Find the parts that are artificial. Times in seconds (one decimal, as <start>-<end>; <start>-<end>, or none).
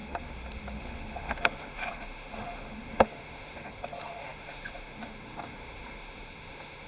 0.0-6.9